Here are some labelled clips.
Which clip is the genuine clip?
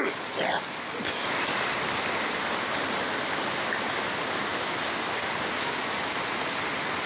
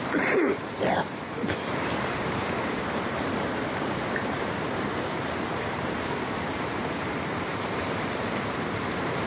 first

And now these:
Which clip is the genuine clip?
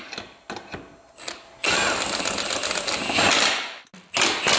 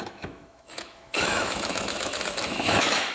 first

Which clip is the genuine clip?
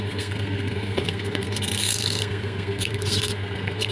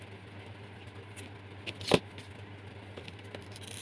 second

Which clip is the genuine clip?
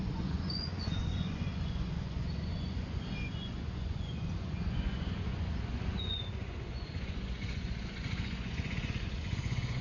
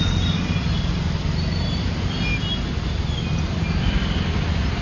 second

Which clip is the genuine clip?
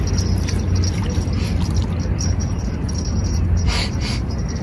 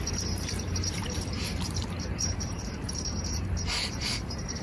first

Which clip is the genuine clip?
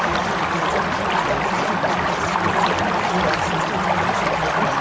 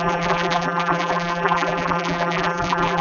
first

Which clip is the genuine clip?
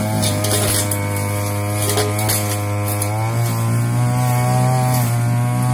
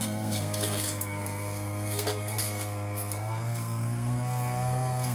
first